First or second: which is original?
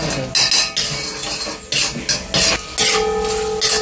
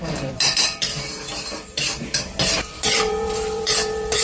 first